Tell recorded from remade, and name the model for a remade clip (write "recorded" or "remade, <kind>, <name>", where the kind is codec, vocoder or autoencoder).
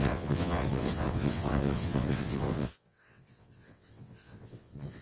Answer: remade, vocoder, WaveNeXt